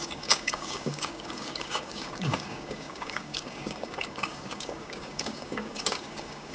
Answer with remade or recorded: remade